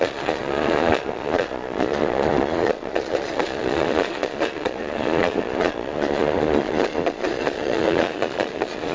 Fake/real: fake